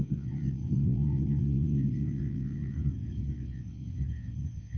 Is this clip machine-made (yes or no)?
yes